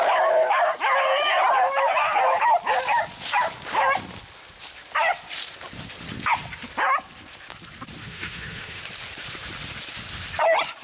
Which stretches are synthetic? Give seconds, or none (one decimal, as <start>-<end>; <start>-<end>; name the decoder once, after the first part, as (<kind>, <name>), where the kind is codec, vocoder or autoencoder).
8.0-8.8 (autoencoder, DAC-VAE)